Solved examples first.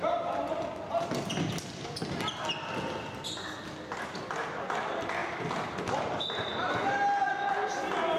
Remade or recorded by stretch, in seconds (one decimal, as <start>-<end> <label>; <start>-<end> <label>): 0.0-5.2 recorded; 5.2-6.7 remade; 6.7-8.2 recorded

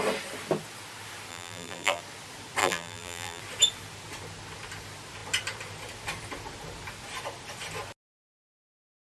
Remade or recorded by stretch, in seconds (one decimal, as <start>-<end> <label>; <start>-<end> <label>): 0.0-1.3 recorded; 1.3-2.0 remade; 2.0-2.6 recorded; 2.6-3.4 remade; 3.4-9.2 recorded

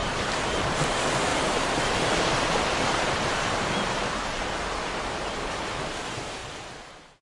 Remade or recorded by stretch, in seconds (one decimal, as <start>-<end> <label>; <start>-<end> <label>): 0.0-0.8 remade; 0.8-1.3 recorded; 1.3-4.9 remade; 4.9-6.4 recorded; 6.4-7.2 remade

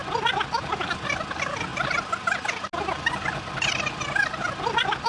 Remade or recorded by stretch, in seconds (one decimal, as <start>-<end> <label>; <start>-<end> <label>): 0.0-5.1 recorded